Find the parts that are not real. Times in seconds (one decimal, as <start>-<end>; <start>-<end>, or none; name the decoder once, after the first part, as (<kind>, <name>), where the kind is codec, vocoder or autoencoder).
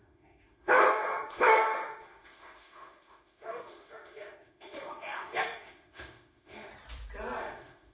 0.0-6.7 (autoencoder, DAC-VAE); 7.4-7.9